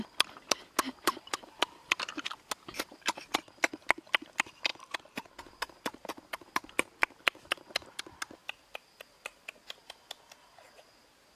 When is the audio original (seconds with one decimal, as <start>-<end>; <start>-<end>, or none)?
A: 0.0-11.3